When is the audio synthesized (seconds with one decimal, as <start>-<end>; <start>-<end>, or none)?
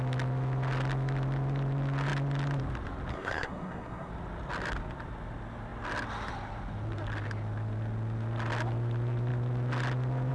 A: 3.1-4.1